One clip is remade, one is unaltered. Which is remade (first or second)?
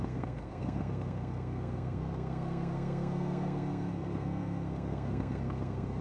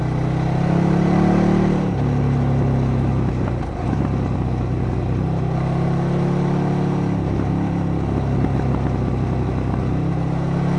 first